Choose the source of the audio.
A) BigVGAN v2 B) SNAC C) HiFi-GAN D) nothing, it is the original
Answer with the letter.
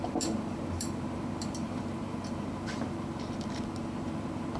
A